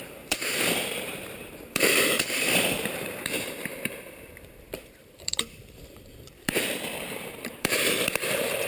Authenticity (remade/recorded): remade